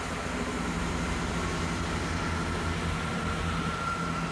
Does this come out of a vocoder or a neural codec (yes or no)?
yes